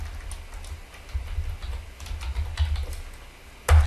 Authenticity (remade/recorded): recorded